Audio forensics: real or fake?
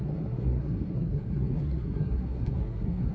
fake